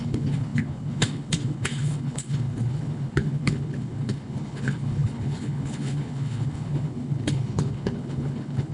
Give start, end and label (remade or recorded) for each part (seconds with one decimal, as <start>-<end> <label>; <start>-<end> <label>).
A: 0.0-8.7 remade